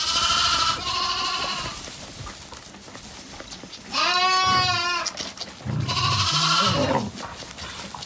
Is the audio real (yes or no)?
yes